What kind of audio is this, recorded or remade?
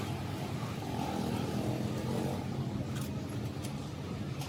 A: recorded